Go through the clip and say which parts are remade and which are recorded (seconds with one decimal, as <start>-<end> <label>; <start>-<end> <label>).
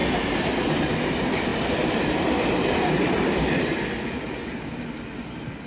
0.0-5.7 recorded